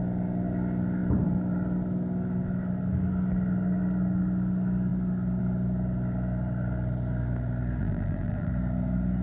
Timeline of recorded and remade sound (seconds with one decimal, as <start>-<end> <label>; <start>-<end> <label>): 0.0-7.8 recorded; 7.8-8.5 remade; 8.5-9.2 recorded